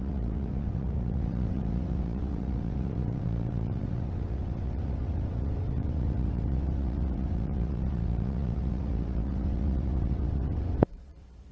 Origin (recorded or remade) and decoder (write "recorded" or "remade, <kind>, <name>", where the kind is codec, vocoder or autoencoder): remade, vocoder, WaveNeXt